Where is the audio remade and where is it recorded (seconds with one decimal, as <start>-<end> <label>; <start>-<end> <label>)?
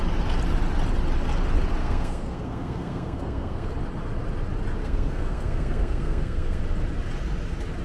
0.0-1.8 recorded; 1.8-3.7 remade; 3.7-4.8 recorded; 4.8-6.6 remade; 6.6-7.8 recorded